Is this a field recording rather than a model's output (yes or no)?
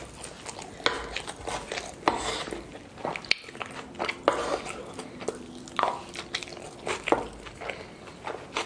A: yes